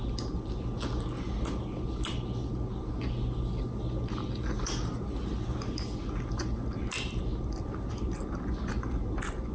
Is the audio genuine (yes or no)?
yes